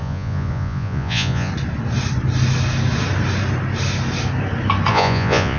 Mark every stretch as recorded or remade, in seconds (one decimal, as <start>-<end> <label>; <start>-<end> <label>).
0.0-1.5 remade; 1.5-4.9 recorded; 4.9-5.6 remade